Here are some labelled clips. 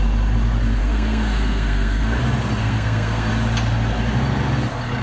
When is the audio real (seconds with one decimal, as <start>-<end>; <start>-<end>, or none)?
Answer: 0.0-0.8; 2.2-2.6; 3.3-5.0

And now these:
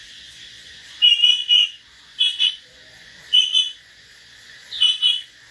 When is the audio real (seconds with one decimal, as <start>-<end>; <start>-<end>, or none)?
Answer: none

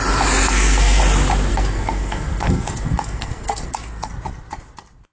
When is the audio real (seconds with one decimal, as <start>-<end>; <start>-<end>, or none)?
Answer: 0.0-0.4; 1.0-1.5; 4.1-5.1

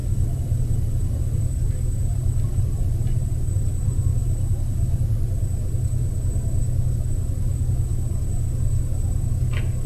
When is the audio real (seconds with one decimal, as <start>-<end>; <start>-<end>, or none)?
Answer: 1.4-2.1; 3.2-4.2; 5.2-9.9

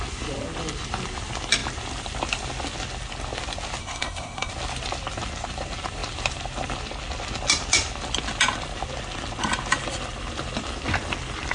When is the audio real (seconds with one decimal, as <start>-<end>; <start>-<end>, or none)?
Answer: 0.0-3.8; 4.5-11.5

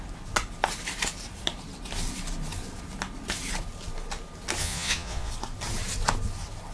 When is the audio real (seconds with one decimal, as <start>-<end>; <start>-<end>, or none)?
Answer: 0.0-4.6; 5.3-6.7